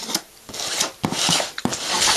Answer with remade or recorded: recorded